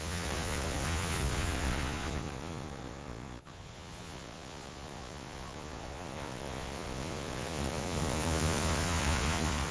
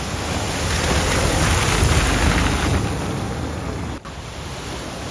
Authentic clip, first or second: second